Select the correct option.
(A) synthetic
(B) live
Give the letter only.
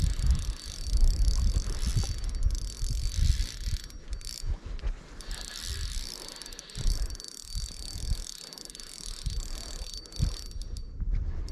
B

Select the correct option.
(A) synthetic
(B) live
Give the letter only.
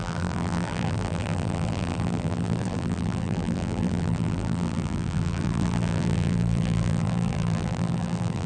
A